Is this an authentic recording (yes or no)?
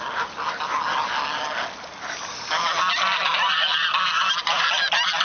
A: yes